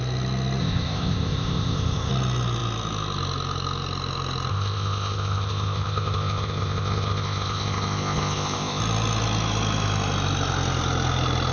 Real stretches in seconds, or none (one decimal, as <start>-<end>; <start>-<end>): 0.0-0.6; 2.1-4.5; 8.8-11.5